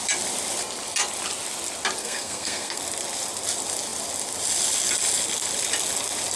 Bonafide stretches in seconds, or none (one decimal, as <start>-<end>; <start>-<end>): 0.0-2.0; 2.8-6.4